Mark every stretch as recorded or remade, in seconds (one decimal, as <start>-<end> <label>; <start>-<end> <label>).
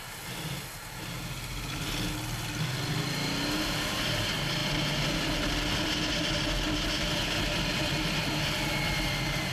0.0-9.5 recorded